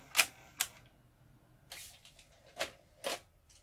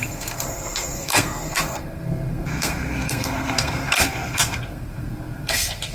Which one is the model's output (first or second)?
second